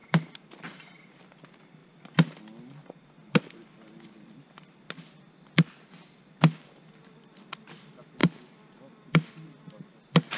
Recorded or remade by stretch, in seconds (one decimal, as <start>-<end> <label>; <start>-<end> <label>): 0.0-1.8 recorded; 1.8-2.4 remade; 2.4-8.2 recorded; 8.2-9.3 remade; 9.3-10.4 recorded